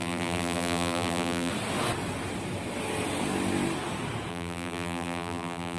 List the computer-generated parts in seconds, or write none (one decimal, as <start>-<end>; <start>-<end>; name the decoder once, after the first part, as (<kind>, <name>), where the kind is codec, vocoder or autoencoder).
0.0-1.5 (vocoder, BigVGAN v2); 4.3-5.8